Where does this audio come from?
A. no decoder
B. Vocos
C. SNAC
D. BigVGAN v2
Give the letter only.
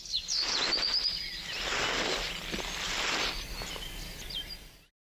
A